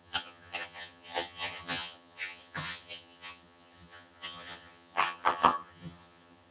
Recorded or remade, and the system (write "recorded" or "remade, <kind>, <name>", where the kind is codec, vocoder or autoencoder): remade, vocoder, HiFi-GAN